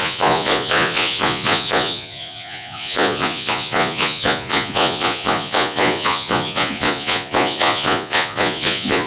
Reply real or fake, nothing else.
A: fake